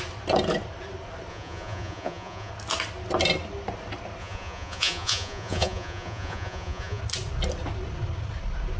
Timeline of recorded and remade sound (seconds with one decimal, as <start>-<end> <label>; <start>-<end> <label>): 0.0-1.3 recorded; 1.3-2.5 remade; 2.5-4.2 recorded; 4.2-7.0 remade; 7.0-8.8 recorded